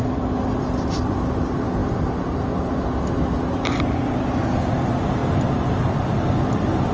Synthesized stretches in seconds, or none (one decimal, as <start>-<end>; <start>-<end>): none